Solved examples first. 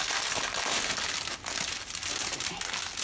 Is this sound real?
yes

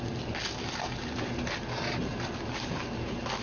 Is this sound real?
yes